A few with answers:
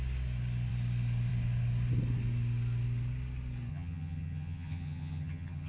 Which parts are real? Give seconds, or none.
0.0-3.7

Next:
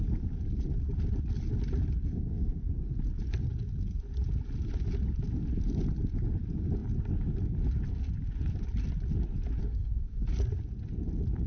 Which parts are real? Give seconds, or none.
0.0-2.1; 2.7-9.6; 10.2-11.5

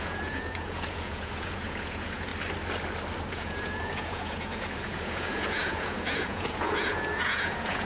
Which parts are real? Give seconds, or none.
2.3-3.3

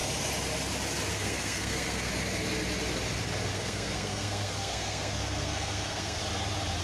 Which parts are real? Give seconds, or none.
0.0-1.1; 2.1-3.5; 6.2-6.8

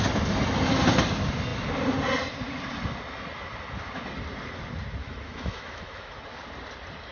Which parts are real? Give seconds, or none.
0.0-5.0; 6.1-7.1

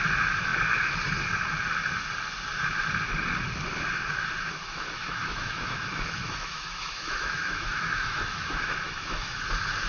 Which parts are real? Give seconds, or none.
0.0-4.6; 9.4-9.9

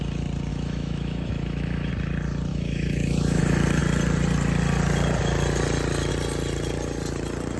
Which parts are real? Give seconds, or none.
0.0-0.5; 1.9-2.5; 3.4-7.6

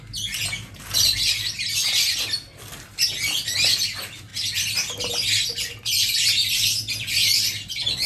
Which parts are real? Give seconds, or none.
0.0-8.1